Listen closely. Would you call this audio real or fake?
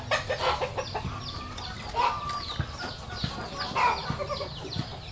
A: real